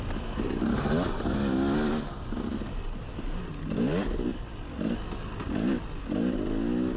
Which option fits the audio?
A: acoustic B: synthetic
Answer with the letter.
A